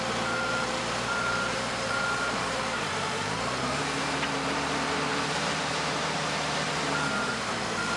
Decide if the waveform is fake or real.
fake